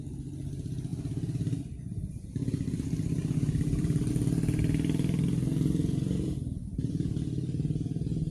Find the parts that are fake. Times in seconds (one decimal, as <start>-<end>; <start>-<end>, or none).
0.9-4.1; 5.8-6.9